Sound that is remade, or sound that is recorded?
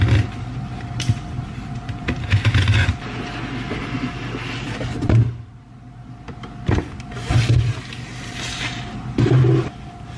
recorded